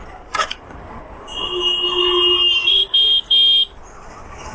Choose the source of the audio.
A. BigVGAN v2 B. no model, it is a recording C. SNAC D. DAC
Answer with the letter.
B